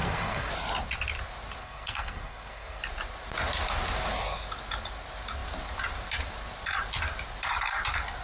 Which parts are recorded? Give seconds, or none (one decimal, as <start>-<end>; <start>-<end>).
0.5-1.6; 2.8-8.2